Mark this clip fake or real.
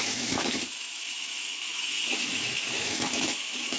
fake